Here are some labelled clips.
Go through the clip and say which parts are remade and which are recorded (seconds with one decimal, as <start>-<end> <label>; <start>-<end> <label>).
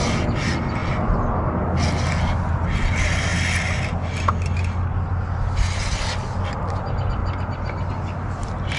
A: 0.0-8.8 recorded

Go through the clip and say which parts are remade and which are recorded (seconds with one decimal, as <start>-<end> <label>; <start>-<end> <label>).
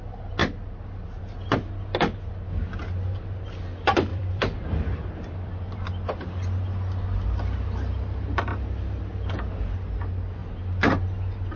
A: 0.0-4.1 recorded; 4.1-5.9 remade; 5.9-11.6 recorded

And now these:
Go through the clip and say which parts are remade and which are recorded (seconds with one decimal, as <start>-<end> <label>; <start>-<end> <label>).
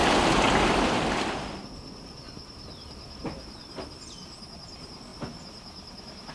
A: 0.0-5.1 remade; 5.1-6.3 recorded